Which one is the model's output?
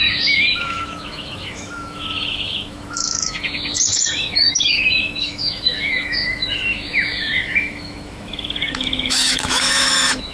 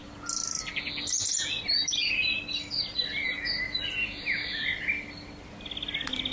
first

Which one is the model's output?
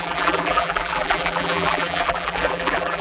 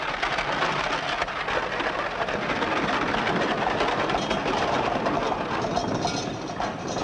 first